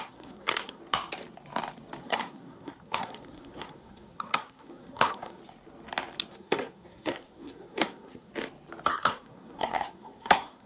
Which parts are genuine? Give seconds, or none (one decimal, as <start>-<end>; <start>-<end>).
0.8-2.0; 5.4-6.3; 8.3-8.9